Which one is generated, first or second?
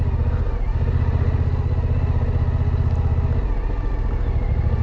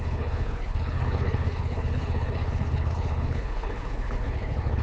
second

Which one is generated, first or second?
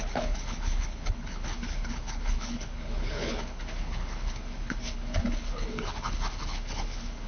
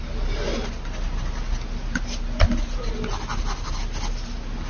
first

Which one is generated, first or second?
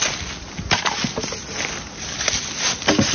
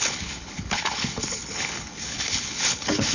second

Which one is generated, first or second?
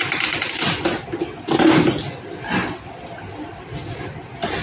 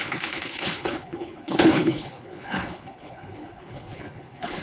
second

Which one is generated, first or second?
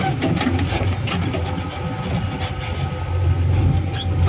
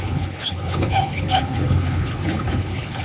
second